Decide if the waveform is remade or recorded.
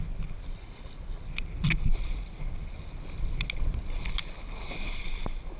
recorded